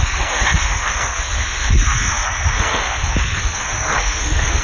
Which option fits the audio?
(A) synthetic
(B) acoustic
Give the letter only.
A